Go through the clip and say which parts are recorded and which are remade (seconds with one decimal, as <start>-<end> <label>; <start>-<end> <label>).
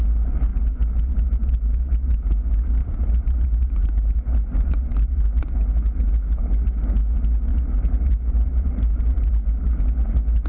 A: 0.0-2.8 recorded; 2.8-5.4 remade; 5.4-7.5 recorded; 7.5-9.3 remade; 9.3-10.5 recorded